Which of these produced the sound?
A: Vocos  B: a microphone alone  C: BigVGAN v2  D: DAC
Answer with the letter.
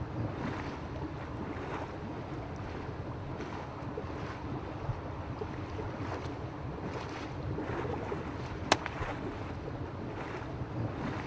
B